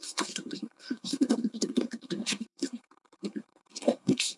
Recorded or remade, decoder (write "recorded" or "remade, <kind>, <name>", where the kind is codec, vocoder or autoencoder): remade, codec, SNAC